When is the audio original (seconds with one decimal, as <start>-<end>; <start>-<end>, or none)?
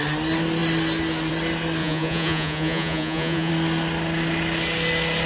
0.0-1.8; 3.5-5.3